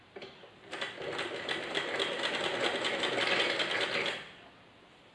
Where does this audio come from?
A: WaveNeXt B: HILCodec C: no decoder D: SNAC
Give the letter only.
C